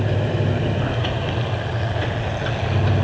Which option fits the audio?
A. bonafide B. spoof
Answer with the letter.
A